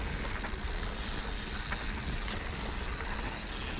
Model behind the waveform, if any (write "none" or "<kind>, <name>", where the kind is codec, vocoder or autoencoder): none